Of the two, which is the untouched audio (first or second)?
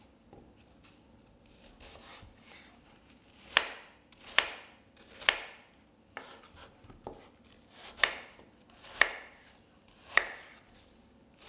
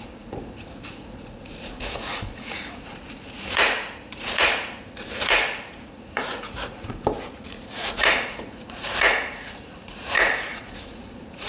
first